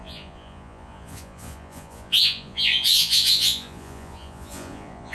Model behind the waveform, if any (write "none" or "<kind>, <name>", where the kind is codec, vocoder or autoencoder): vocoder, Vocos